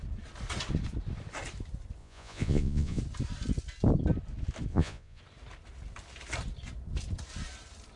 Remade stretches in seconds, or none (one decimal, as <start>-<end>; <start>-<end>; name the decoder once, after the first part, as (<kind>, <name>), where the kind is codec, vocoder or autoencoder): 2.0-3.0 (vocoder, Vocos); 4.7-5.2